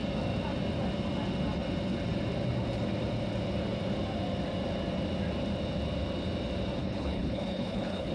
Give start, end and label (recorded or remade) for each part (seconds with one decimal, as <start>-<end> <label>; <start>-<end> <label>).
0.0-6.8 recorded; 6.8-8.1 remade